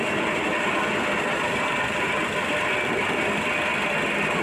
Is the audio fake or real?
real